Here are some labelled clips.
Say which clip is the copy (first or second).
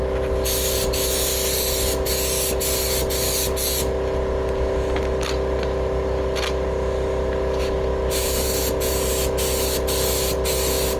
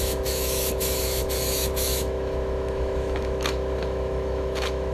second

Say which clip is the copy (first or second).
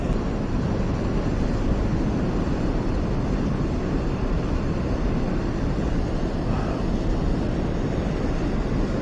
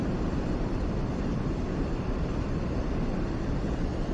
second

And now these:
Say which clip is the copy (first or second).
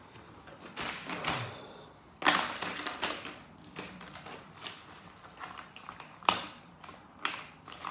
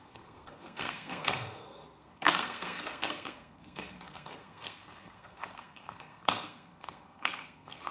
second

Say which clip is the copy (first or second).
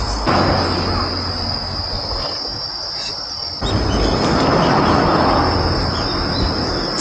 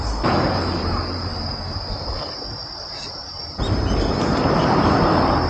second